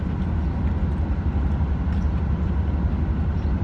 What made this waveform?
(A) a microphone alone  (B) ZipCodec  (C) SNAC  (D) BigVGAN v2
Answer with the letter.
A